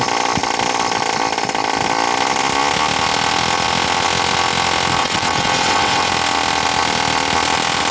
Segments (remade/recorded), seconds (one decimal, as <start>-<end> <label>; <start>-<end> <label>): 0.0-5.0 recorded; 5.0-6.1 remade; 6.1-7.9 recorded